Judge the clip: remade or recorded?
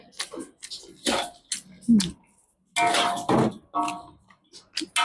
recorded